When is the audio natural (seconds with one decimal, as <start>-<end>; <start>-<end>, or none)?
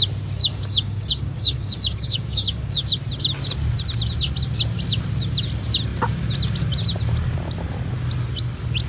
0.0-0.4; 2.9-8.9